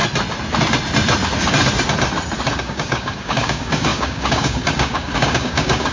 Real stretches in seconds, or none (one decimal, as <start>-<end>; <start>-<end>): 0.0-2.6